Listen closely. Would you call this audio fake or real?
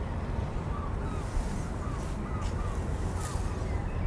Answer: real